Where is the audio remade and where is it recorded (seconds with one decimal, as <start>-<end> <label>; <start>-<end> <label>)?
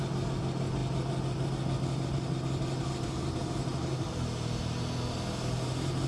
0.0-6.1 recorded